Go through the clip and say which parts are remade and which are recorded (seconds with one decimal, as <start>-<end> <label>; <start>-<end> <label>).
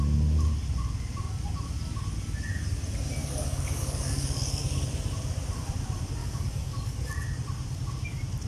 0.0-3.2 recorded; 3.2-4.8 remade; 4.8-6.2 recorded; 6.2-7.1 remade; 7.1-8.5 recorded